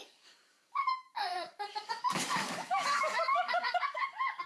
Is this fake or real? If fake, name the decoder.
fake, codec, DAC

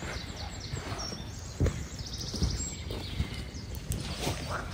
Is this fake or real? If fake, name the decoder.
real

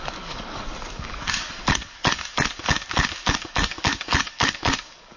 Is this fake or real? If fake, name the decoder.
fake, codec, DAC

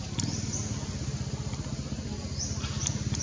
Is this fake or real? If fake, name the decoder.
real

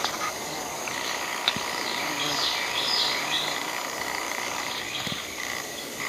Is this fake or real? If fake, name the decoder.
fake, codec, DAC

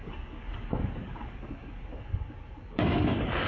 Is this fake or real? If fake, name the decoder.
fake, codec, DAC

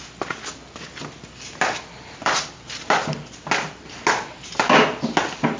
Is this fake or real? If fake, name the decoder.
real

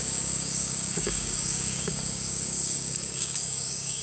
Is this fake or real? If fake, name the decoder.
fake, codec, DAC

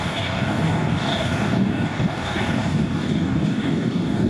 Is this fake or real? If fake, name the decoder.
fake, codec, DAC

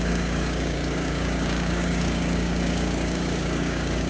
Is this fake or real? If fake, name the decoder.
fake, codec, DAC